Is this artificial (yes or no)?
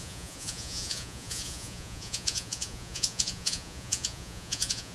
yes